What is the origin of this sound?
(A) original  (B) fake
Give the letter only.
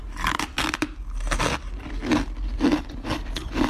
A